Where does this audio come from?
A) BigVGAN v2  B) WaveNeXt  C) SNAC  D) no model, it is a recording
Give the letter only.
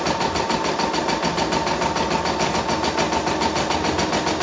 D